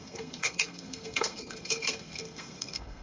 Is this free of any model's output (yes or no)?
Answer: no